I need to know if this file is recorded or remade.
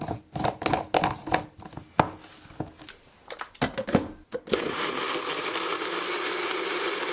recorded